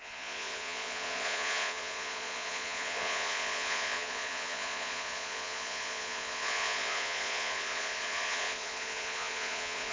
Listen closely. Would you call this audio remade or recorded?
remade